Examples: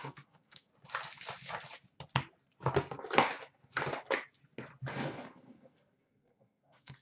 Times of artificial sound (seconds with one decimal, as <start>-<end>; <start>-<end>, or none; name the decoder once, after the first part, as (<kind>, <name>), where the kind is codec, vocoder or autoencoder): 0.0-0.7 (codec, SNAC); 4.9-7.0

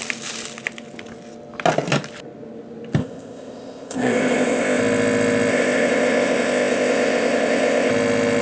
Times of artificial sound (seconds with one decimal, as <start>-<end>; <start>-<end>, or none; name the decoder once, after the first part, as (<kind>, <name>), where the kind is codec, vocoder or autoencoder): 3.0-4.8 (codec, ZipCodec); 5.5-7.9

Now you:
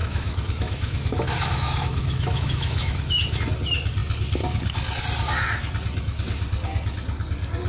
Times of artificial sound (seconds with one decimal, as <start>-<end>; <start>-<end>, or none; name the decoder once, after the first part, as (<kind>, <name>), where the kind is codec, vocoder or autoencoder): 0.0-3.4 (autoencoder, DAC-VAE)

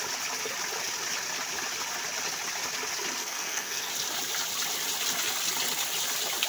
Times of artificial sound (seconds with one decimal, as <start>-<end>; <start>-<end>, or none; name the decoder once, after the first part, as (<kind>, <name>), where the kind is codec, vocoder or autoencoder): 3.2-3.9 (codec, SNAC)

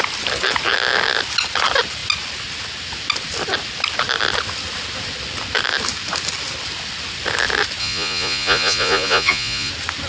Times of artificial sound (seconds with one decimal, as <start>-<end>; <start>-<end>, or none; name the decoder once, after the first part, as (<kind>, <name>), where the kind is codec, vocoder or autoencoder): 7.8-9.7 (vocoder, Vocos)

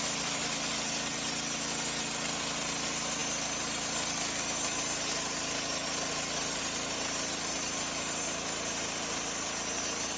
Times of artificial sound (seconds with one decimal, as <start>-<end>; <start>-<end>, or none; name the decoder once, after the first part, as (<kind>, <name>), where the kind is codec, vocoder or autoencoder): none

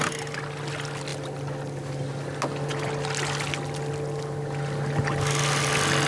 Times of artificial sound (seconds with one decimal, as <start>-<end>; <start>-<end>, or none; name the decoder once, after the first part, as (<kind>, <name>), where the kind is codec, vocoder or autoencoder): none

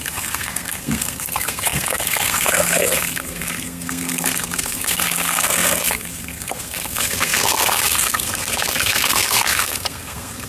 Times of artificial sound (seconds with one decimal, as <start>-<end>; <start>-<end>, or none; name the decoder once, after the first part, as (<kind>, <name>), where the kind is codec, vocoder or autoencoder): 0.0-10.5 (codec, SNAC)